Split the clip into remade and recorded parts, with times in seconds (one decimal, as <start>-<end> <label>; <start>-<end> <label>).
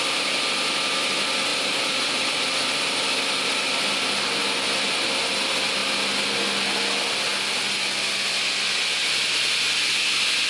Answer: 0.0-1.5 recorded; 1.5-2.4 remade; 2.4-10.5 recorded